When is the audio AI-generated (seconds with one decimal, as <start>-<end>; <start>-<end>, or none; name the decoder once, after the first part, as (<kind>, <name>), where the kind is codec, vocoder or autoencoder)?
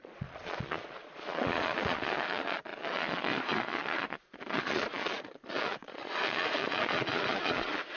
0.0-8.0 (vocoder, Vocos)